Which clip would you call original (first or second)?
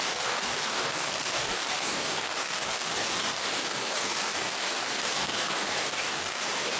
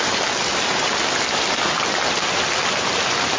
second